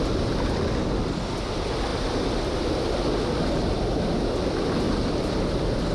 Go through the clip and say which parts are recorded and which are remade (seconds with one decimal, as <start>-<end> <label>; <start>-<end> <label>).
0.0-5.9 recorded